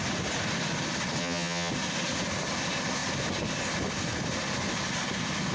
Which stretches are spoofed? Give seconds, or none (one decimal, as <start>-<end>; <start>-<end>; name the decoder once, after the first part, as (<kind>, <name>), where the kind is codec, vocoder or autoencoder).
1.2-1.7 (vocoder, HiFi-GAN)